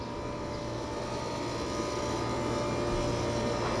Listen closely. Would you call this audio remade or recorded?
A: recorded